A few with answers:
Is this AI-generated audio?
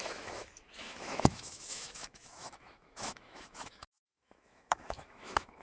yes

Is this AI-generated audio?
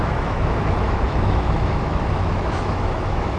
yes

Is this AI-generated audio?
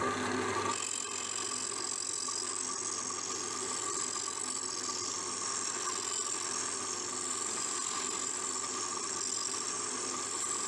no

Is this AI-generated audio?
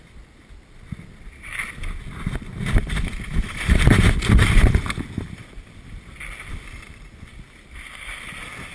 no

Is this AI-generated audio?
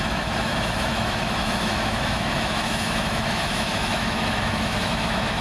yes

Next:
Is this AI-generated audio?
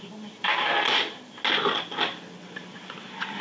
no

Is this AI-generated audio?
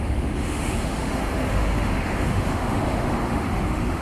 yes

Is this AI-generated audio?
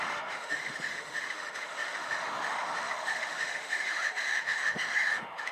yes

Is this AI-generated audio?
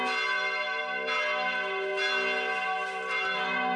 no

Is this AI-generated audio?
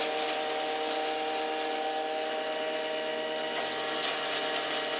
no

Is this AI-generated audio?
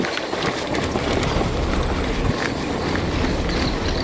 no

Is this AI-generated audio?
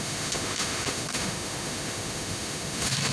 yes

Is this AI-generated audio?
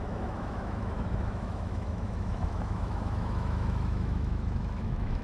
yes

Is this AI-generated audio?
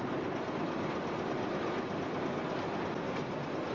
no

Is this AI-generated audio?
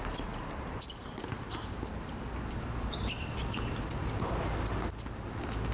no